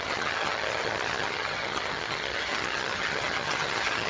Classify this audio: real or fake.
fake